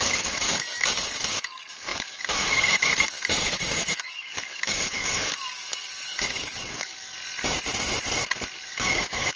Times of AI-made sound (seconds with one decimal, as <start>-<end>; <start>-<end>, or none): 0.0-7.1; 8.7-9.4